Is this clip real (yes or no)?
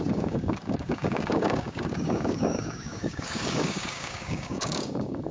no